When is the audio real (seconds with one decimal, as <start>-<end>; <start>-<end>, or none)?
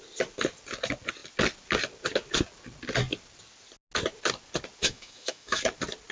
0.0-4.8; 5.6-6.1